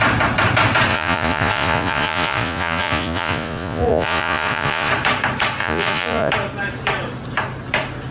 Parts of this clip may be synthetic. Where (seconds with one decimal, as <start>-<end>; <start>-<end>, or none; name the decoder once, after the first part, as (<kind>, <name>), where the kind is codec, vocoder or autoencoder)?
0.9-4.9 (vocoder, Vocos); 5.6-6.3